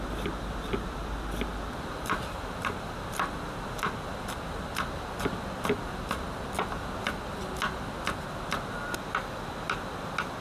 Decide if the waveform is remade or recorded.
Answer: recorded